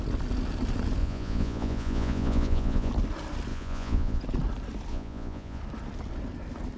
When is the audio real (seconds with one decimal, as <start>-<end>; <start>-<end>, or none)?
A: 0.0-1.0; 2.9-3.5; 4.2-4.9; 5.6-6.8